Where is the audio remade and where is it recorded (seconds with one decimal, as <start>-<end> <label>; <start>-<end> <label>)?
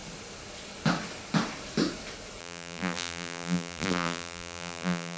0.0-2.4 recorded; 2.4-5.2 remade